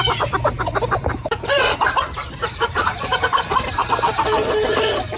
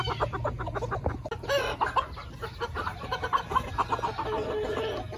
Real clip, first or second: second